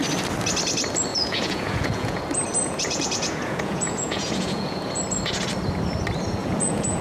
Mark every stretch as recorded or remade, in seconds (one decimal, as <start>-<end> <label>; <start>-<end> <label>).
0.0-1.1 recorded; 1.1-2.2 remade; 2.2-2.6 recorded; 2.6-5.0 remade; 5.0-6.4 recorded; 6.4-7.0 remade